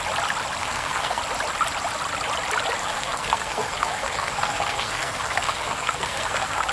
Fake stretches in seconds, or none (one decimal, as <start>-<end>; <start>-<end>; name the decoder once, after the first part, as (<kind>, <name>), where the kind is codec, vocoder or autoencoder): 0.6-1.2 (codec, SNAC); 2.8-6.7